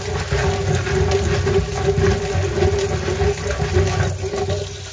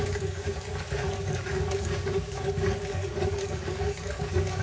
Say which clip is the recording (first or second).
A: first